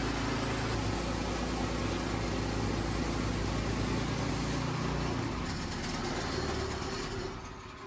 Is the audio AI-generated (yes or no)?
no